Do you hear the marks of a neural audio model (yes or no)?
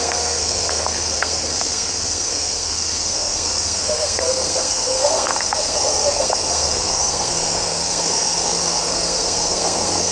yes